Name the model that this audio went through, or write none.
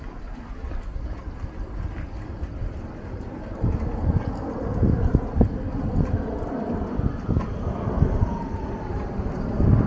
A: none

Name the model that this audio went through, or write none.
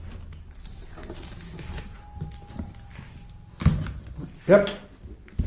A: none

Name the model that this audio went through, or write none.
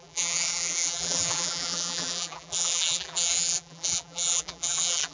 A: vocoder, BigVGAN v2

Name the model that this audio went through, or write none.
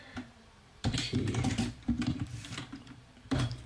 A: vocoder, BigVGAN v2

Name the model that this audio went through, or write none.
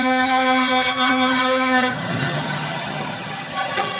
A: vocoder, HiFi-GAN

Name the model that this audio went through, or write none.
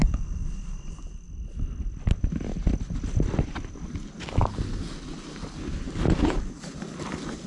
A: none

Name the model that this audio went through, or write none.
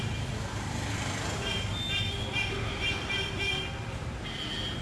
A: none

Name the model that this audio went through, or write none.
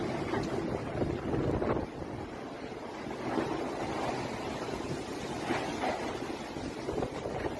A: none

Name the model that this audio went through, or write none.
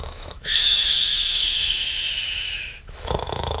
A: autoencoder, DAC-VAE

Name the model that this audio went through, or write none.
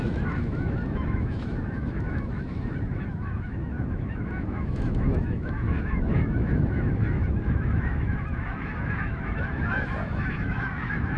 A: autoencoder, DAC-VAE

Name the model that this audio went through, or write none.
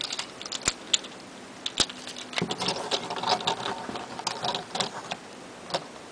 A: none